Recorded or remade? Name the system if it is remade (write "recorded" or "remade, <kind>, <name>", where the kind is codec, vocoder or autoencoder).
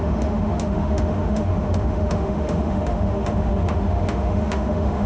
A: remade, autoencoder, DAC-VAE